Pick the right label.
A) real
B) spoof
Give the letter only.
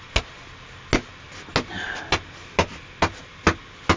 A